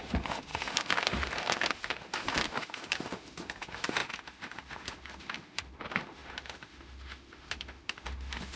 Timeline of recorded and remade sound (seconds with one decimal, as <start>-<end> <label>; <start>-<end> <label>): 0.0-8.6 remade